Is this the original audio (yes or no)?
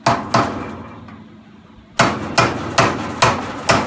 yes